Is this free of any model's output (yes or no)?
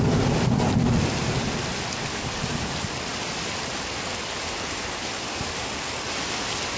yes